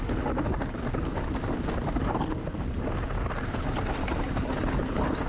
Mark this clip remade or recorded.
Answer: recorded